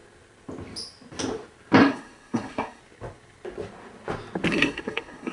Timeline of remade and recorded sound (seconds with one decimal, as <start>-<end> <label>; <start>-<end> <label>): 0.0-1.8 recorded; 1.8-2.8 remade; 2.8-4.5 recorded; 4.5-5.3 remade